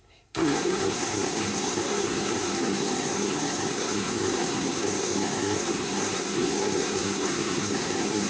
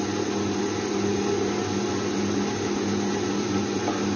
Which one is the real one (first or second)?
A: second